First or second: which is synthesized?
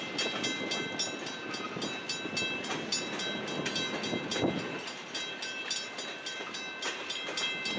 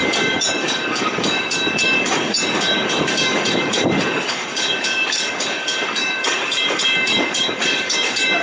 second